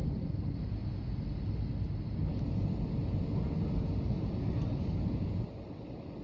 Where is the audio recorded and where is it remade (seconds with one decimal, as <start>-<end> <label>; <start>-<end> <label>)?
0.0-6.2 recorded